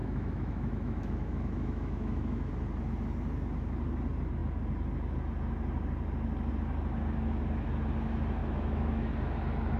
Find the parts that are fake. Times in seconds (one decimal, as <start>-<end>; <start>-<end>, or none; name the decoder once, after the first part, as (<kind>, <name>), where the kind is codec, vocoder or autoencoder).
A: 0.0-2.5 (autoencoder, DAC-VAE); 8.4-9.1

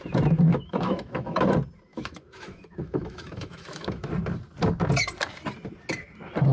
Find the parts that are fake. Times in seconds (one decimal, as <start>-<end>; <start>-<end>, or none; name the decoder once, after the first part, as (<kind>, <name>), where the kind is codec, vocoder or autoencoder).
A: 0.5-1.4 (autoencoder, DAC-VAE); 1.9-4.1